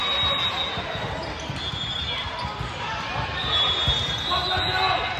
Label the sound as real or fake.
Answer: real